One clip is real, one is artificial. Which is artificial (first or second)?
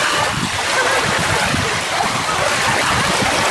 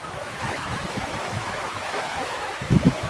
second